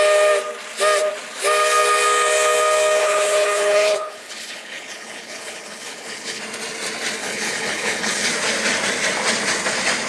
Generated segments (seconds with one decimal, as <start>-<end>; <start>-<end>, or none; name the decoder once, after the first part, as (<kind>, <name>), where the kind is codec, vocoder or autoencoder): 3.0-6.4 (codec, HILCodec); 7.2-8.3